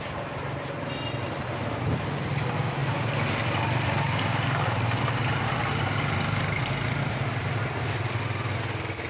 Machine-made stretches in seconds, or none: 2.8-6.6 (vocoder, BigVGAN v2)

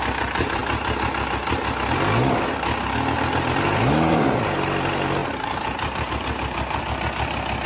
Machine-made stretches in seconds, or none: 0.0-0.6 (vocoder, BigVGAN v2); 3.3-7.7

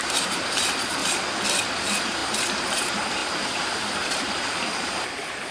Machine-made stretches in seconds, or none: 0.0-1.0 (vocoder, BigVGAN v2); 1.8-5.5

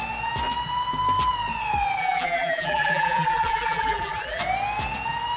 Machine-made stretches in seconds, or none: 2.0-4.4 (vocoder, BigVGAN v2)

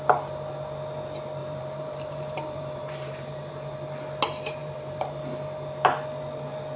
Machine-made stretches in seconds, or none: 1.4-3.5 (vocoder, BigVGAN v2); 4.6-5.2

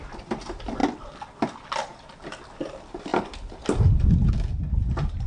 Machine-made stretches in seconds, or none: none

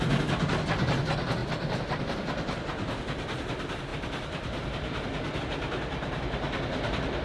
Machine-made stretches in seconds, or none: 3.9-5.4 (vocoder, BigVGAN v2)

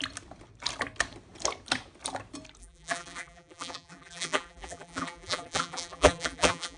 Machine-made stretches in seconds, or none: 2.6-6.8 (vocoder, BigVGAN v2)